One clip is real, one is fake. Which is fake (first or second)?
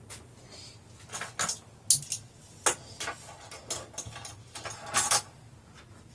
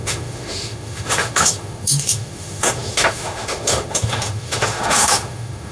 second